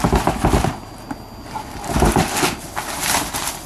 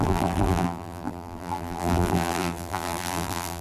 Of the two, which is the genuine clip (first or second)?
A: first